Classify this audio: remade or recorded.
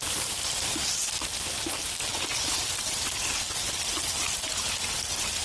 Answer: remade